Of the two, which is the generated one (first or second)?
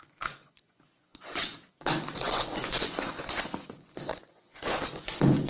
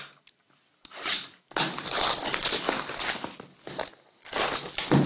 first